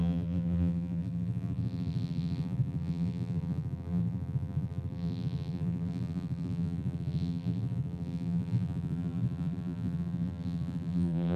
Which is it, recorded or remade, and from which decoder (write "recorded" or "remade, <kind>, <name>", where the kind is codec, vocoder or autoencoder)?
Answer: remade, vocoder, BigVGAN v2